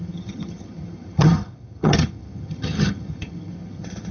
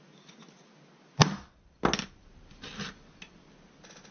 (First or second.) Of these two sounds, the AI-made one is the first